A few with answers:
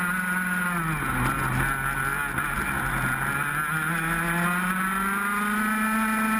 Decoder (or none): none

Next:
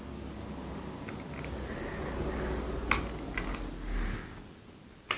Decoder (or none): none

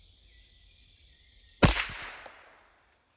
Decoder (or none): none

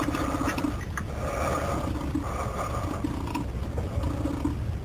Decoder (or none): none